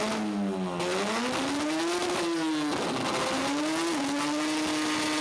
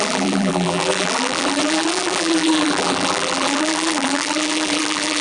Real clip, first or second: first